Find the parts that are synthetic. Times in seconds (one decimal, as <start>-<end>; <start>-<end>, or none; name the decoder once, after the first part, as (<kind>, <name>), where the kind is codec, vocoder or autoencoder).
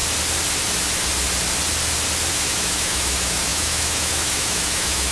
2.3-5.1 (autoencoder, DAC-VAE)